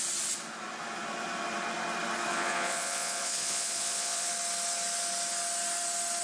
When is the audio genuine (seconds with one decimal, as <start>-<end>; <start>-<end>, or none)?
0.0-2.3; 4.3-6.2